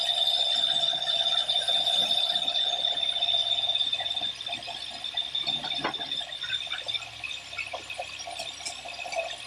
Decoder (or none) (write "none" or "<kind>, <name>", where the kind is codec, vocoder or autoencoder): none